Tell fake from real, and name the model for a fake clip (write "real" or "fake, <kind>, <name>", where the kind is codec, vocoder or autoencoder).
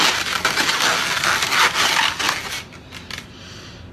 real